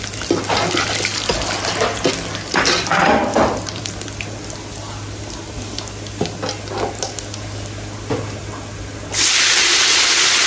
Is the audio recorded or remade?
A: recorded